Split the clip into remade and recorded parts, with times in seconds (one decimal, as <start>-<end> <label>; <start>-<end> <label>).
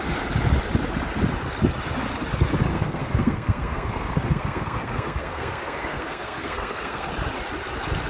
0.0-2.7 recorded; 2.7-7.1 remade; 7.1-8.1 recorded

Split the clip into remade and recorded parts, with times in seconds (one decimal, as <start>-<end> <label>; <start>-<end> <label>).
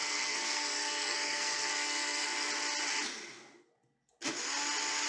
0.0-2.5 remade; 2.5-5.1 recorded